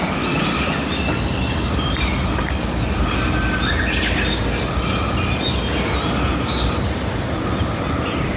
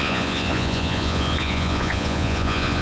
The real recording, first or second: first